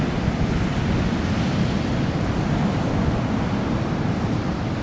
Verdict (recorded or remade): recorded